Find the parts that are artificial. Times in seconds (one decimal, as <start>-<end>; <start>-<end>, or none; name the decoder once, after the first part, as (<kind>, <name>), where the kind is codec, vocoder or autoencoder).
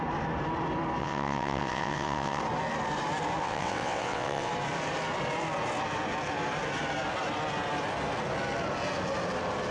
1.0-2.4 (vocoder, WaveNeXt); 3.4-4.5